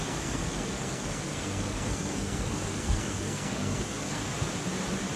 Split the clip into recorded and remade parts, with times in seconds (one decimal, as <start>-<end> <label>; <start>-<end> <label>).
0.0-4.3 remade; 4.3-5.2 recorded